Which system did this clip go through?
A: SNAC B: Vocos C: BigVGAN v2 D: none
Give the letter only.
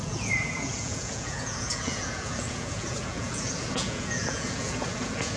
B